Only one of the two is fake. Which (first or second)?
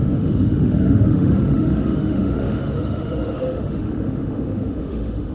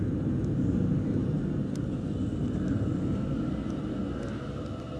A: first